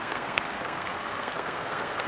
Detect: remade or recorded remade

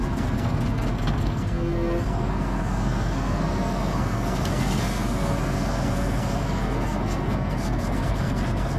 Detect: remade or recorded remade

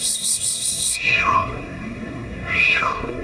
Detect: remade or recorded remade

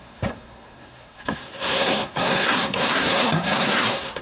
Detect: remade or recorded remade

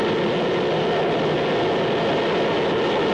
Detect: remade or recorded recorded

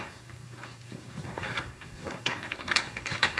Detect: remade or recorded remade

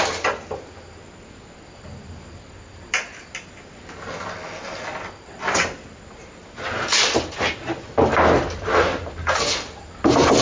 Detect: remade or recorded recorded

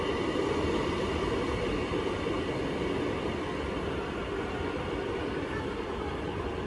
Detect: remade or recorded recorded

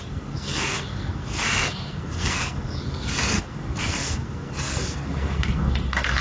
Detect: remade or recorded remade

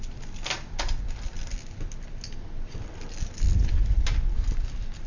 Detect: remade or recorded recorded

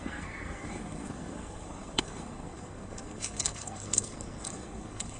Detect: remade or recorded remade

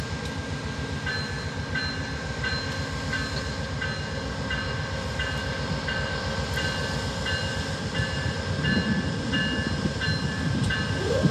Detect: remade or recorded recorded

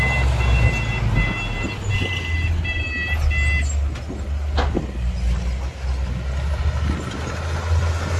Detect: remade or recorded recorded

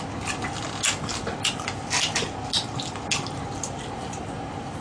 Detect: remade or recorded recorded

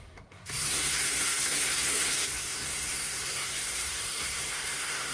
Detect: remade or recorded remade